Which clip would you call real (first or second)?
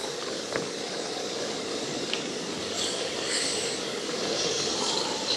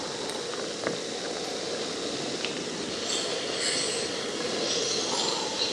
second